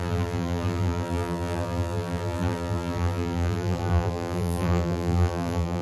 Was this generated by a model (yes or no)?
yes